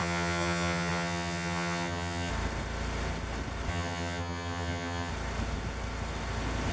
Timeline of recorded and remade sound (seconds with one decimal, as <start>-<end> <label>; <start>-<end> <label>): 0.0-2.3 remade; 2.3-3.7 recorded; 3.7-5.1 remade; 5.1-6.7 recorded